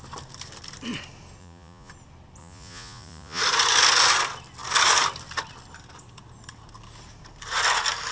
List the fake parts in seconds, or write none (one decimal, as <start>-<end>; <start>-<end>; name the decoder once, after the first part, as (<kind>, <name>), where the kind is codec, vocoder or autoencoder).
1.4-1.9 (vocoder, Vocos); 2.4-3.4